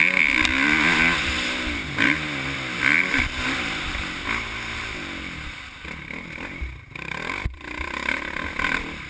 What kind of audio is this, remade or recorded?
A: recorded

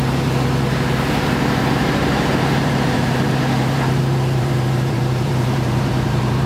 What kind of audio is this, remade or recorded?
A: remade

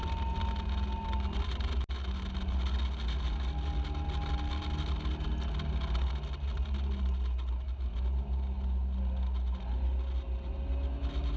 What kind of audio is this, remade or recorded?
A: recorded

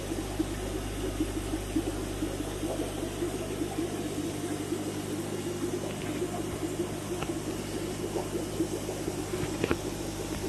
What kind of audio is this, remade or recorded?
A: recorded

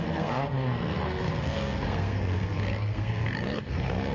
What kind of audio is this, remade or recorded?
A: remade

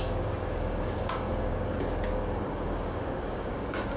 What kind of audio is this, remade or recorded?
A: remade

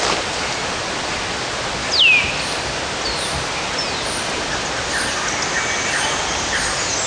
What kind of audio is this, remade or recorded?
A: recorded